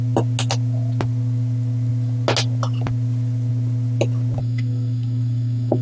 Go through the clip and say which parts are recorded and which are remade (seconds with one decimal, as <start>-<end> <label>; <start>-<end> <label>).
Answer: 0.0-4.4 recorded; 4.4-5.8 remade